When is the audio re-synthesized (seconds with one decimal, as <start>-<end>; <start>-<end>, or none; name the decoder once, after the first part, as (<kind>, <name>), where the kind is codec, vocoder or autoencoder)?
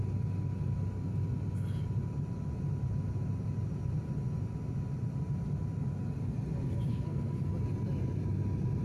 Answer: 6.9-7.5 (codec, SNAC)